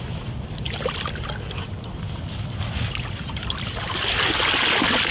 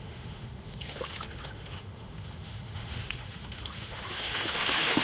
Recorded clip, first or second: first